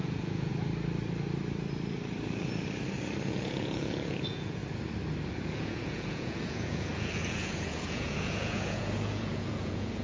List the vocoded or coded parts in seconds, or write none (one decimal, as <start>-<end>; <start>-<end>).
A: 0.0-0.5; 3.3-4.6; 5.3-10.0